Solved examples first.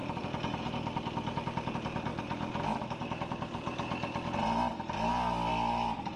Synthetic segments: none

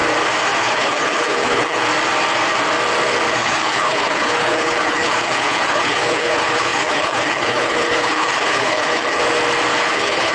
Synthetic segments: 0.6-1.9 (codec, HILCodec); 3.3-9.2; 9.8-10.3

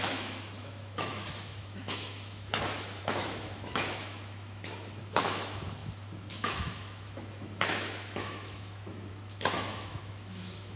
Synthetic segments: 0.0-10.8 (autoencoder, DAC-VAE)

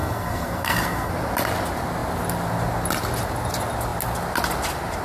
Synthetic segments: 0.0-1.1 (codec, SNAC)